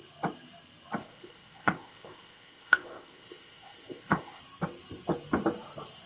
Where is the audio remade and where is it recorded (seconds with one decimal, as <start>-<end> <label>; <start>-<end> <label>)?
0.0-1.0 recorded; 1.0-4.4 remade; 4.4-6.1 recorded